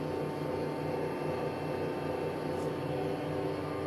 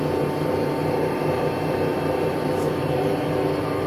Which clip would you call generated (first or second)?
second